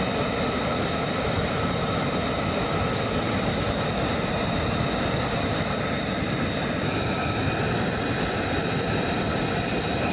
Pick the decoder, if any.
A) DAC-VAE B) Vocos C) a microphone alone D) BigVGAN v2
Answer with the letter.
C